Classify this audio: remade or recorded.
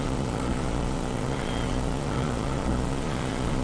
remade